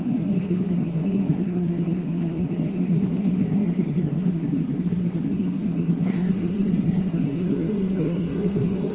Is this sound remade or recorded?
remade